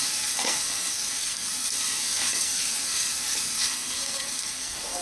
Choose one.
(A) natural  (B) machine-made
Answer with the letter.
B